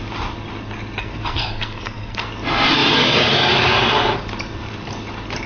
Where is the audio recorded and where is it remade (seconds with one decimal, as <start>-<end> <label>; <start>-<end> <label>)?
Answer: 0.0-1.0 recorded; 1.0-2.3 remade; 2.3-5.5 recorded